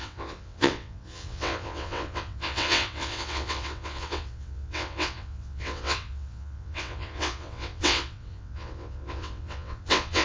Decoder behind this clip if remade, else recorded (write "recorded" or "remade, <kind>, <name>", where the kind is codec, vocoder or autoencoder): remade, vocoder, WaveNeXt